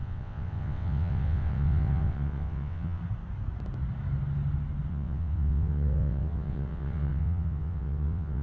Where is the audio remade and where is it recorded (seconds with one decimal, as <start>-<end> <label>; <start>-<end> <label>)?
0.0-3.0 remade; 3.0-4.9 recorded; 4.9-8.4 remade